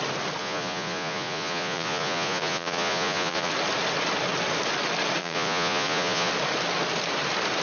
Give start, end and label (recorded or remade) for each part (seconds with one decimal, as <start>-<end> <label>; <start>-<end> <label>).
0.0-0.4 recorded; 0.4-3.5 remade; 3.5-5.2 recorded; 5.2-6.3 remade; 6.3-7.6 recorded